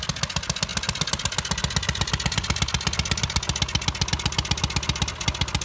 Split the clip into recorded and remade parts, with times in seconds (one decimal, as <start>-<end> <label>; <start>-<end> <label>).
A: 0.0-5.6 recorded